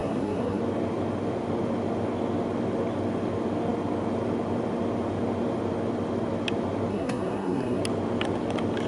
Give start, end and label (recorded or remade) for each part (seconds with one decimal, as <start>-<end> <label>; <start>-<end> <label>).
0.0-0.6 remade; 0.6-6.9 recorded; 6.9-7.8 remade; 7.8-8.9 recorded